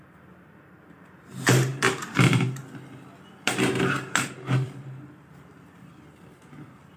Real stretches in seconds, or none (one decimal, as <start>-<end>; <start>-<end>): 2.6-3.5